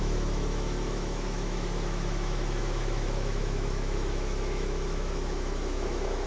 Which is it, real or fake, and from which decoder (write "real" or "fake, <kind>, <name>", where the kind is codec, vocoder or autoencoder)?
fake, autoencoder, DAC-VAE